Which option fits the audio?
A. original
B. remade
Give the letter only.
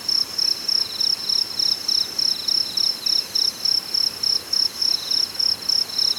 A